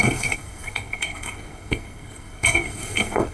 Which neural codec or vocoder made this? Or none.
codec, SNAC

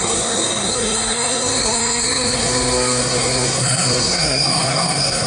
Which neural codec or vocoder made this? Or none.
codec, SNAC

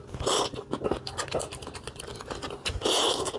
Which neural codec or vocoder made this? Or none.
none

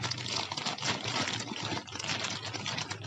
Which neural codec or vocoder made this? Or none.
none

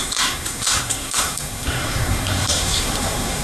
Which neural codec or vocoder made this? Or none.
codec, SNAC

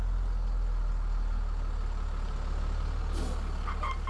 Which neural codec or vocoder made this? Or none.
none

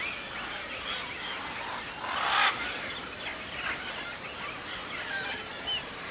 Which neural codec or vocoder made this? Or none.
none